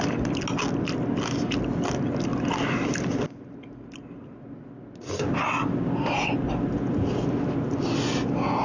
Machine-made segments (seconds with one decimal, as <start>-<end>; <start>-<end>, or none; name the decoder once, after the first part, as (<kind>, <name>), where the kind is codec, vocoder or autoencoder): none